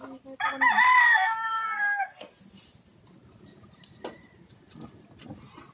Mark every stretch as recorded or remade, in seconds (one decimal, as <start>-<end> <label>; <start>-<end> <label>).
0.0-1.1 recorded; 1.1-2.3 remade; 2.3-5.7 recorded